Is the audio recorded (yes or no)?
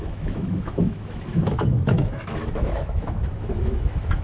no